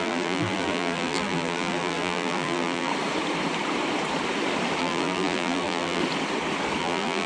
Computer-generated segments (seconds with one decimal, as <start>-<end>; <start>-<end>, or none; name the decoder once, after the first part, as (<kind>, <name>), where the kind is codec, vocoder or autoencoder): 0.0-2.9 (vocoder, BigVGAN v2); 4.8-6.0; 6.8-7.3